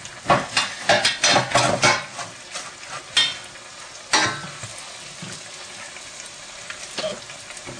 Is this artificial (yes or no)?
no